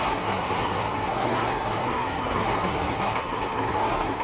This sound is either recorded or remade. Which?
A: remade